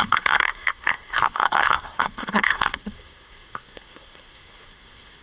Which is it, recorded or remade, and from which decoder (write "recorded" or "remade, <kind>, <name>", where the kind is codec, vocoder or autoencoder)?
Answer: remade, codec, SNAC